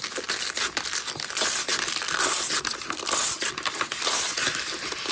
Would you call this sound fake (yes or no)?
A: no